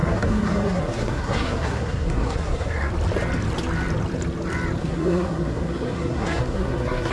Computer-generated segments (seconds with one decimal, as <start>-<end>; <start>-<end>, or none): 0.0-2.9; 4.8-7.1